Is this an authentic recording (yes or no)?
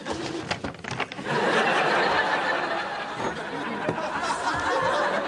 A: yes